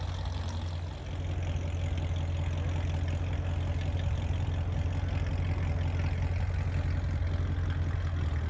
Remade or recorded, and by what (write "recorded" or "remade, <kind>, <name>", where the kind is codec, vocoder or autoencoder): recorded